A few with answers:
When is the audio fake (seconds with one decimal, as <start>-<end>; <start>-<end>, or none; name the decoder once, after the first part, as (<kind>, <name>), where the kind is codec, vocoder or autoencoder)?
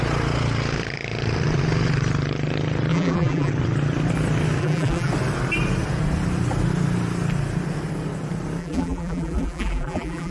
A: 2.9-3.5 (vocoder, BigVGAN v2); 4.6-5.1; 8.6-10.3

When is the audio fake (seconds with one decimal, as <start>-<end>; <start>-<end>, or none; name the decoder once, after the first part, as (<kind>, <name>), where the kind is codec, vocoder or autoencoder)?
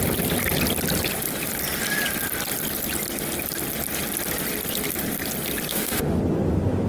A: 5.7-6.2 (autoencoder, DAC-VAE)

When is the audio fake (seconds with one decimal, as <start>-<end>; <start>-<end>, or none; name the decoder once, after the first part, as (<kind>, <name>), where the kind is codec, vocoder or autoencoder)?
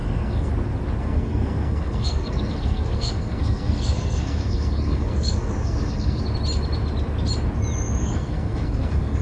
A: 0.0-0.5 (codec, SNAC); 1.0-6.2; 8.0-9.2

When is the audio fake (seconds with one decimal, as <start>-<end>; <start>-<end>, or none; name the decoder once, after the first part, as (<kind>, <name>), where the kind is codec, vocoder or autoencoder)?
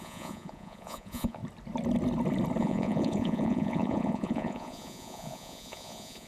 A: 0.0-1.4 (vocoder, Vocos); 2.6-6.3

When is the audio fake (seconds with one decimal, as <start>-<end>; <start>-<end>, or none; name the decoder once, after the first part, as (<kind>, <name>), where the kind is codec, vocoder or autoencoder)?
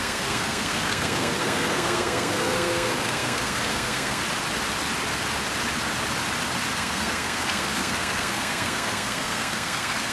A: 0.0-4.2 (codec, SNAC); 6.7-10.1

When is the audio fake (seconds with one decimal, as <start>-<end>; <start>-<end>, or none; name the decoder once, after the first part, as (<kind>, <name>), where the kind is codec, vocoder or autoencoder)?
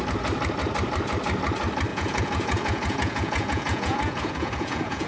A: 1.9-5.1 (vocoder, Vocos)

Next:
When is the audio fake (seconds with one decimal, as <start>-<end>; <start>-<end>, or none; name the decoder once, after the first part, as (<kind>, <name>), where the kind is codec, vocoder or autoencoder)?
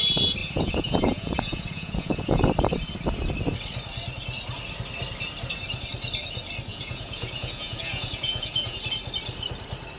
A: 0.4-2.4 (vocoder, Vocos); 6.7-8.8